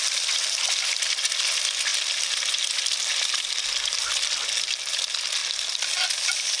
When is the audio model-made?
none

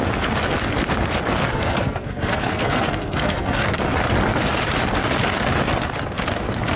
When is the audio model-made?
1.4-3.8 (codec, SNAC)

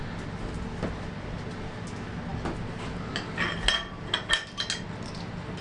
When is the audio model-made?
none

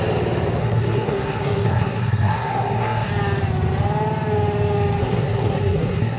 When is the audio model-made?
0.6-3.1 (codec, SNAC); 5.0-6.2

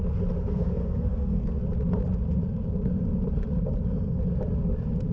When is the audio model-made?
0.4-1.6 (codec, SNAC)

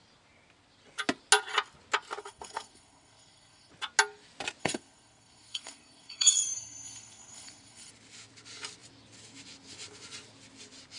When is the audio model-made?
2.2-3.7 (codec, SNAC); 4.6-7.9